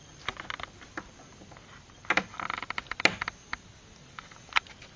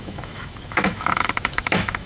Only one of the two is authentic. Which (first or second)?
first